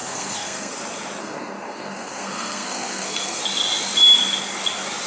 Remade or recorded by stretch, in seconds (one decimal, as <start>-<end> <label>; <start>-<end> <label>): 0.0-0.7 remade; 0.7-1.2 recorded; 1.2-3.4 remade; 3.4-5.1 recorded